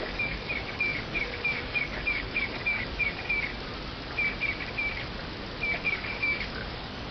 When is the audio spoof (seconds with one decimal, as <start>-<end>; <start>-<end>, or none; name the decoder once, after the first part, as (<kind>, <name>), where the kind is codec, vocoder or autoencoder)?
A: 0.0-3.5 (codec, DAC); 5.8-7.1